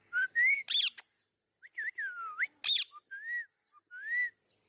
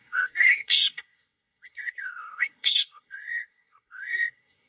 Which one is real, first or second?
first